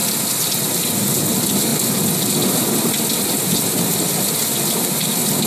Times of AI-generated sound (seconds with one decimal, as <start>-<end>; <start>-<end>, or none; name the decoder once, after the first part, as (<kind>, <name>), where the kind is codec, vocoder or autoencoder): none